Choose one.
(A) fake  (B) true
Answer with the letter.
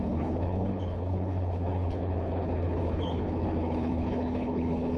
A